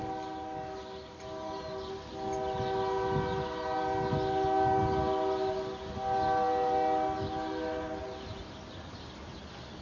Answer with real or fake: real